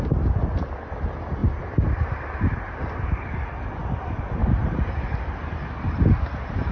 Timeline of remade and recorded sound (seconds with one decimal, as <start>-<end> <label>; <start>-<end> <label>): 0.0-4.4 recorded; 4.4-6.0 remade; 6.0-6.7 recorded